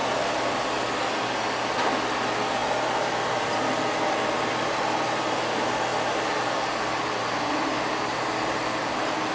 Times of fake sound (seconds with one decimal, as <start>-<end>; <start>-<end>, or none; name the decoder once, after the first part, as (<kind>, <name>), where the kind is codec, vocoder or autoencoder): none